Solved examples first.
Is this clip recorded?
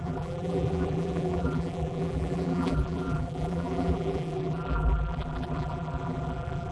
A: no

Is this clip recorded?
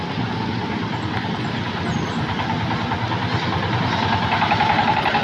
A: yes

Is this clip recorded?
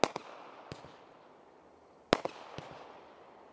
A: yes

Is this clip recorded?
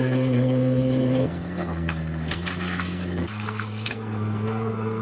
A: no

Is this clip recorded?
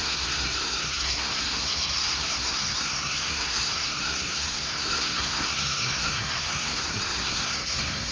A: no